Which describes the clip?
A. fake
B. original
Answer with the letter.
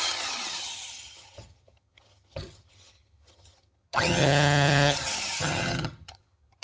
A